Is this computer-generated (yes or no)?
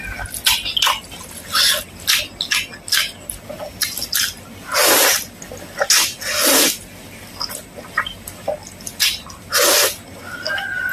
no